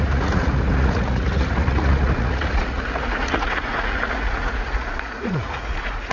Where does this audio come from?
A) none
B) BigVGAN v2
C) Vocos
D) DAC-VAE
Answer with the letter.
C